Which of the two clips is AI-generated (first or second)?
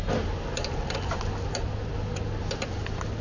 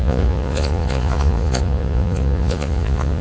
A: second